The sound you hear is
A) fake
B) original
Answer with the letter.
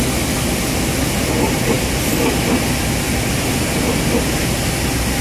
B